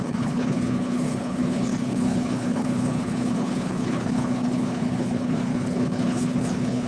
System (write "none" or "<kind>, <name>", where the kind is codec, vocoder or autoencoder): codec, HILCodec